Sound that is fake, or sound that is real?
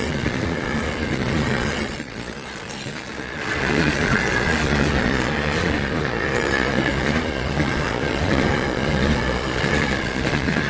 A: fake